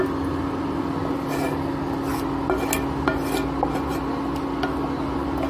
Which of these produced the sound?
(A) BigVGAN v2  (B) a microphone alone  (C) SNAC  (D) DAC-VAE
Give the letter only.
B